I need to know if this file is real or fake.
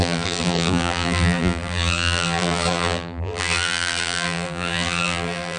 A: fake